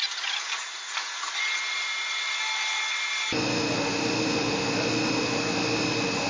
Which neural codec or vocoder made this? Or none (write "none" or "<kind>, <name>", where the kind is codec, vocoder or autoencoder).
none